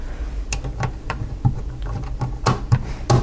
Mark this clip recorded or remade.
recorded